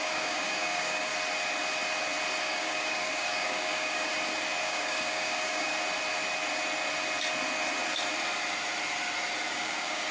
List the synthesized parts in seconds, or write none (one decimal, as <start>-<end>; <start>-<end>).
0.0-1.1; 2.4-4.1; 4.6-5.7; 9.5-10.1